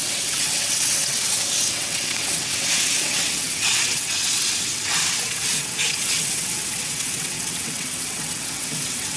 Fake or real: fake